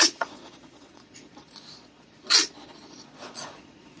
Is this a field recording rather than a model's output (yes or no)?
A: no